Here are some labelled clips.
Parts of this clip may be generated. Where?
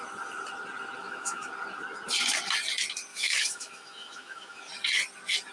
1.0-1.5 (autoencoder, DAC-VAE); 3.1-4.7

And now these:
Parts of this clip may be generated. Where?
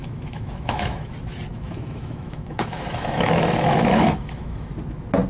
0.0-1.1 (autoencoder, DAC-VAE); 1.5-4.7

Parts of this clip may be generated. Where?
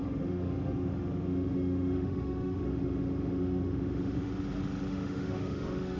0.0-4.3 (autoencoder, DAC-VAE); 4.9-6.0